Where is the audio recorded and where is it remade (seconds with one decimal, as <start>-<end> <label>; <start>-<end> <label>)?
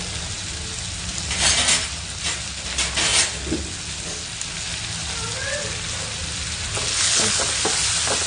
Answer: 0.0-6.9 recorded; 6.9-7.4 remade; 7.4-8.3 recorded